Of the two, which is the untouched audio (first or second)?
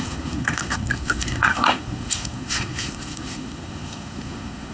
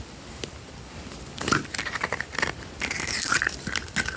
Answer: second